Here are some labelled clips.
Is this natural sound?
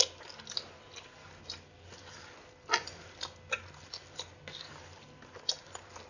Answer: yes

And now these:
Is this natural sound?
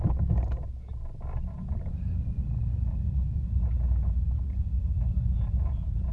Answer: yes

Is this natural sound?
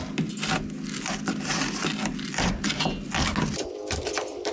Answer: yes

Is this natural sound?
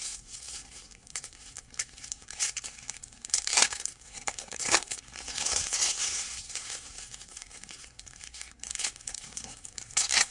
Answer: no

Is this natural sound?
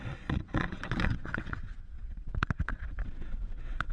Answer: no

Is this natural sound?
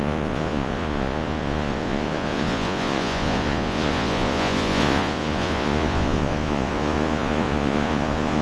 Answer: no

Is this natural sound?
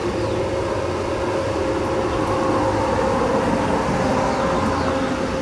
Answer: yes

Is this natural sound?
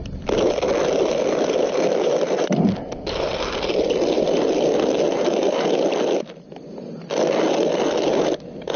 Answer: yes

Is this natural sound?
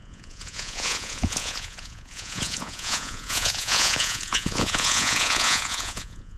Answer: no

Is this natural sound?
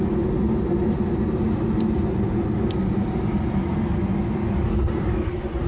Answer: yes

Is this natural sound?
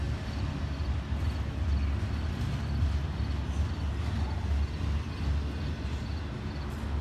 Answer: yes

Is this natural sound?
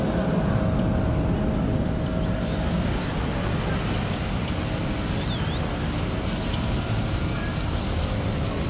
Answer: yes